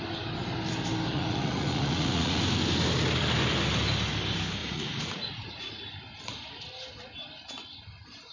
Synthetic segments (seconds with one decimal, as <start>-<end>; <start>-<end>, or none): 1.1-2.4; 4.6-5.9